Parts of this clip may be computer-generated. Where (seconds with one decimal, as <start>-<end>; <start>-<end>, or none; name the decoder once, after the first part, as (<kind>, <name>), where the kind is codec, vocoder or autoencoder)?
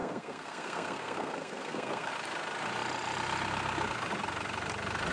0.0-2.1 (codec, SNAC)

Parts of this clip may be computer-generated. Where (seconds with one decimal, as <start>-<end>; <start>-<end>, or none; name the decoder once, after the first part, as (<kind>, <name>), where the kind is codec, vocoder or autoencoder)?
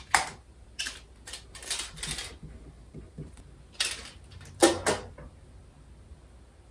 none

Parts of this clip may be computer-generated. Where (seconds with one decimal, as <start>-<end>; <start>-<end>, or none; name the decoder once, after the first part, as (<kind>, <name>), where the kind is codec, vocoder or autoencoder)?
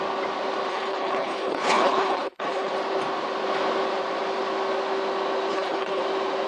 0.7-2.7 (codec, HILCodec); 5.5-6.0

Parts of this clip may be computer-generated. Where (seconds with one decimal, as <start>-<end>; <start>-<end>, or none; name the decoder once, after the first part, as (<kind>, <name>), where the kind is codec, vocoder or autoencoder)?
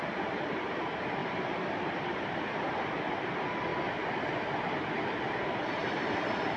1.2-2.8 (vocoder, BigVGAN v2); 5.8-6.6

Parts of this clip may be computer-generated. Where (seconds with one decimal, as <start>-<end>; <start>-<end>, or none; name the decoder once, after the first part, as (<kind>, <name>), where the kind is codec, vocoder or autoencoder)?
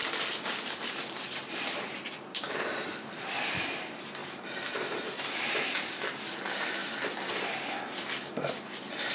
0.0-4.2 (vocoder, BigVGAN v2); 5.2-6.8